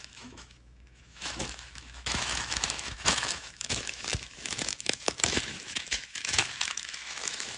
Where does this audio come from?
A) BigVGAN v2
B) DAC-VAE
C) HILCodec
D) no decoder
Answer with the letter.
B